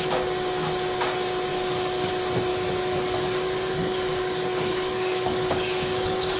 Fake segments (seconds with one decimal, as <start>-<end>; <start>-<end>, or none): 1.5-2.1; 2.5-6.4